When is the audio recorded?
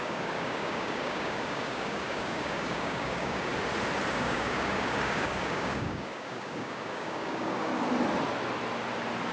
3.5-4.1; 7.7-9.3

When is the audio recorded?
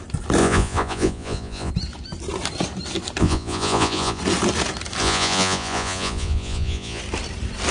0.0-0.4; 1.7-3.2; 4.2-5.0; 7.0-7.7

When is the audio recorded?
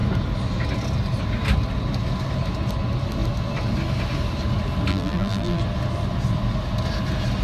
0.0-4.9; 5.6-7.4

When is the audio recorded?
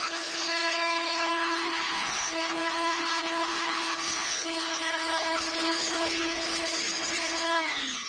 none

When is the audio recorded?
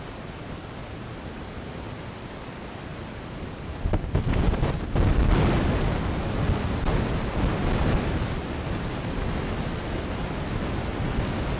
0.0-0.8; 1.7-2.9; 4.9-7.6; 8.4-11.6